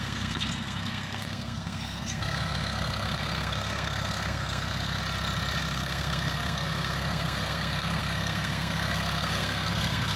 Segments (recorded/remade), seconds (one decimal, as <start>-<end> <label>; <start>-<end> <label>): 0.0-5.0 remade; 5.0-5.6 recorded; 5.6-10.2 remade